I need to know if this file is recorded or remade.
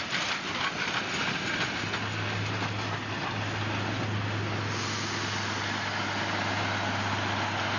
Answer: recorded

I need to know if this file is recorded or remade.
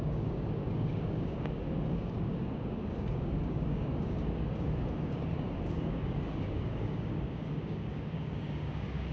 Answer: remade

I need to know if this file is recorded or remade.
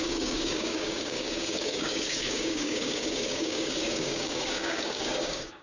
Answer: remade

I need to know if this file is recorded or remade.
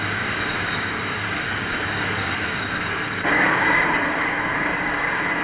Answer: remade